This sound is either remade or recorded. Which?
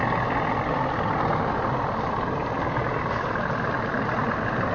recorded